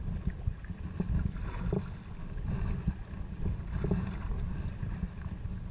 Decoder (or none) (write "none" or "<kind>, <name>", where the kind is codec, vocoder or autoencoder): none